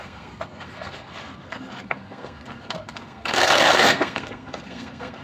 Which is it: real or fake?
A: fake